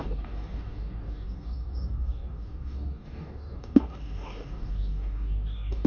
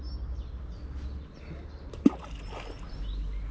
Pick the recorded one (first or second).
second